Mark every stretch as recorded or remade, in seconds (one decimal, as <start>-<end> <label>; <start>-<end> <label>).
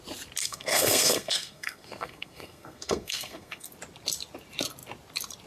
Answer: 0.0-0.4 recorded; 0.4-3.7 remade; 3.7-5.5 recorded